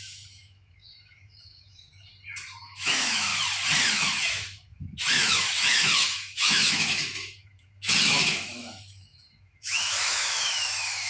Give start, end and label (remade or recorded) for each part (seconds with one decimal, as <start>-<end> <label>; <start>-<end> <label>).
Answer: 0.0-2.1 remade; 2.1-2.6 recorded; 2.6-3.3 remade; 3.3-3.9 recorded; 3.9-11.1 remade